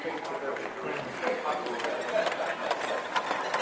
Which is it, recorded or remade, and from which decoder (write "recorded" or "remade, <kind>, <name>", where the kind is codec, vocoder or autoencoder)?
recorded